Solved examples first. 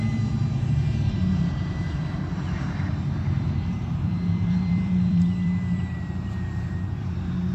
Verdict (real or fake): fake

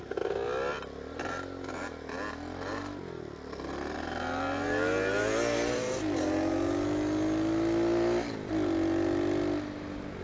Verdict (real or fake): real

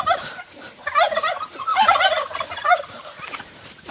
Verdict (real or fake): fake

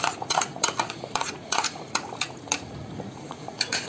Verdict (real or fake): fake